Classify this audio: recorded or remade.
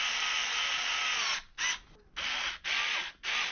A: recorded